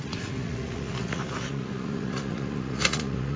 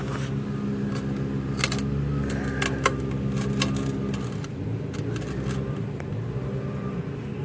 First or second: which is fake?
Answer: first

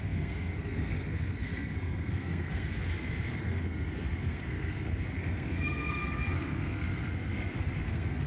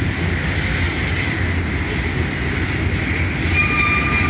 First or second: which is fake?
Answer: first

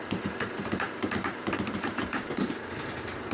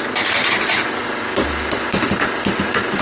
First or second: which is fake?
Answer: first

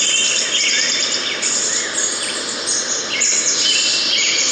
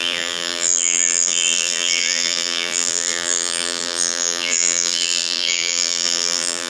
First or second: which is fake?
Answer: second